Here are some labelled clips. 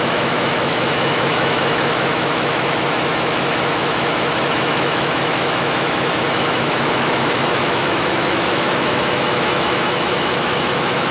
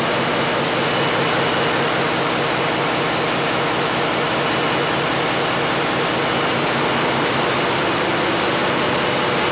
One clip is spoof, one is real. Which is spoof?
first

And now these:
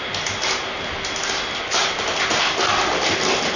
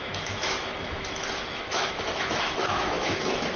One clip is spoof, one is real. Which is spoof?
second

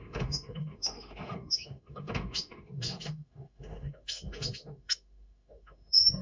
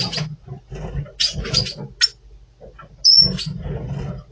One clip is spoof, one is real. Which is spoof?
first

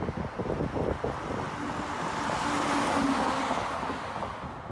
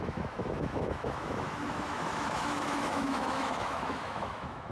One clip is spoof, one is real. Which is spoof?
second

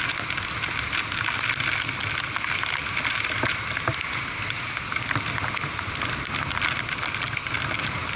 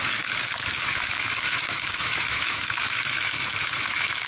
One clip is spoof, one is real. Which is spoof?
second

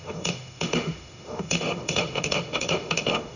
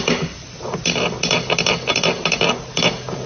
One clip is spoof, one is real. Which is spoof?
first